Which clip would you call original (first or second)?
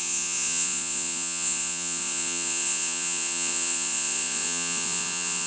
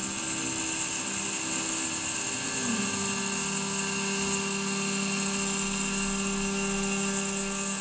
second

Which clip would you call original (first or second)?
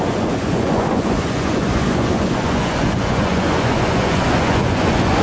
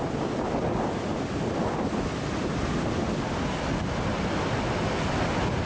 second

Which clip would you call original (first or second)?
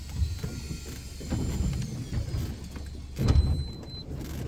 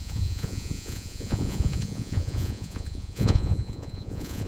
first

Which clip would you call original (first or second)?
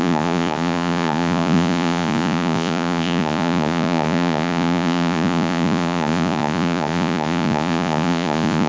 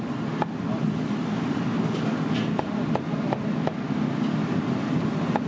second